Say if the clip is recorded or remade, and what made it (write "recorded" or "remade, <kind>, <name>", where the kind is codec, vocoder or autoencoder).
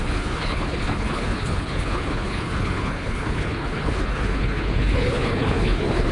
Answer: remade, codec, HILCodec